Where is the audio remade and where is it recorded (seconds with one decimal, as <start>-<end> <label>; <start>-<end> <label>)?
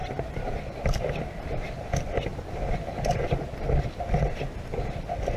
0.0-5.4 recorded